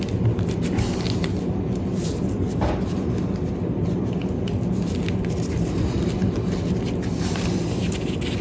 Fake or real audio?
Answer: real